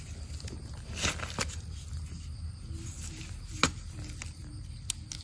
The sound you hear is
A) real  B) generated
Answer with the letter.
A